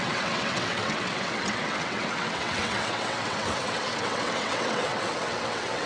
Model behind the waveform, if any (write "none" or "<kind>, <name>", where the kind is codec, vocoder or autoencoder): vocoder, WaveNeXt